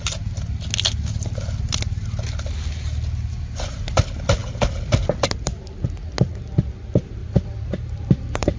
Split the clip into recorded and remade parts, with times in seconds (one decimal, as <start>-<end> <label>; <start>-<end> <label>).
0.0-7.2 recorded; 7.2-8.6 remade